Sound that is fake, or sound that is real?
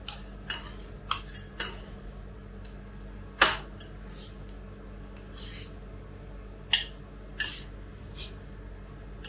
real